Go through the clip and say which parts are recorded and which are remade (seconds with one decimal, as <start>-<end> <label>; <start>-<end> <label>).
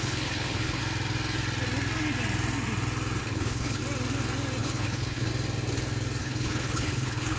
0.0-0.8 remade; 0.8-3.2 recorded; 3.2-3.8 remade; 3.8-4.6 recorded; 4.6-5.3 remade; 5.3-6.2 recorded; 6.2-7.4 remade